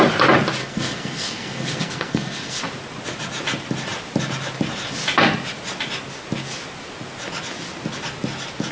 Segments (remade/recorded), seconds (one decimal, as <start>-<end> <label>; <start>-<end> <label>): 0.0-0.6 recorded; 0.6-2.6 remade; 2.6-8.7 recorded